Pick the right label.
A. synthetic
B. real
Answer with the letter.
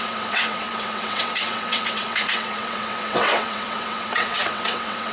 A